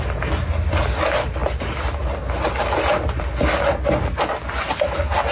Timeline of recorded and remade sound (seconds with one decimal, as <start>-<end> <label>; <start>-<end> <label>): 0.0-5.3 recorded